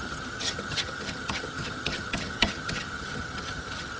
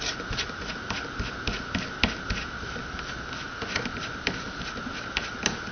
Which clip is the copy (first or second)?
first